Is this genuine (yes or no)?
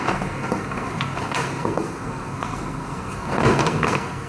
no